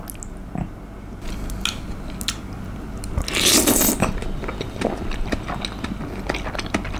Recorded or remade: recorded